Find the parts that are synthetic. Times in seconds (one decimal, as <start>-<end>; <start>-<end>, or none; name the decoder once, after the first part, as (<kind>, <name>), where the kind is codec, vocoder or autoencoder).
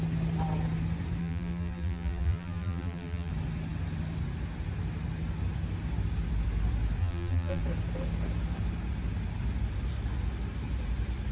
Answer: 1.2-3.3 (vocoder, BigVGAN v2); 7.0-7.6